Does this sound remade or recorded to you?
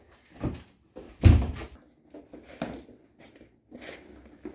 recorded